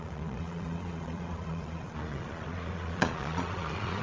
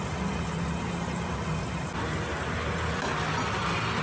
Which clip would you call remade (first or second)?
first